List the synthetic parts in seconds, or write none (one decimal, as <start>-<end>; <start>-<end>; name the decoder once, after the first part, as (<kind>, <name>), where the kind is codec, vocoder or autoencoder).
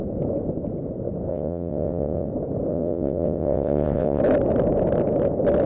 1.3-2.3 (vocoder, WaveNeXt); 2.7-4.2